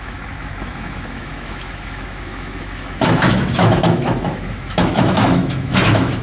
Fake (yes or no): yes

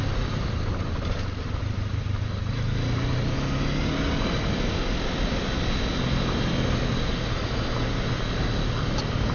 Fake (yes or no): no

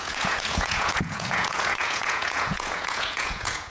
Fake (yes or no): yes